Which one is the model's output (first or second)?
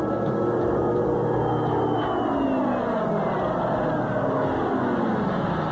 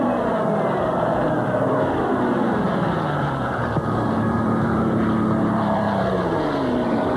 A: second